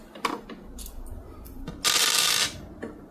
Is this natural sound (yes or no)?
yes